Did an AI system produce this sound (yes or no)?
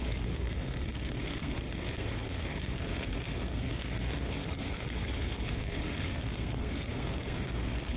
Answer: yes